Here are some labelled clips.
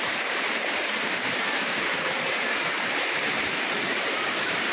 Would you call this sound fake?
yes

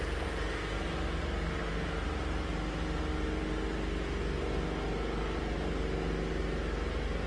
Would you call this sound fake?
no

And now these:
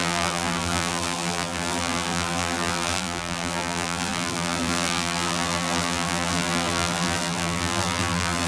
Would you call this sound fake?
yes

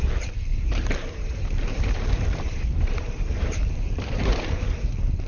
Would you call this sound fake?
yes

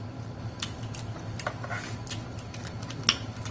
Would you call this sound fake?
no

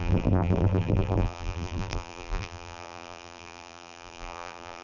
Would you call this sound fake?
yes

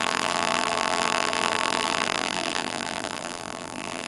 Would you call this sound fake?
yes